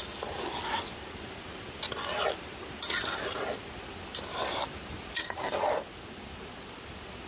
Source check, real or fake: real